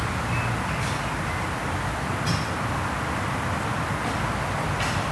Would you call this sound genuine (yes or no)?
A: yes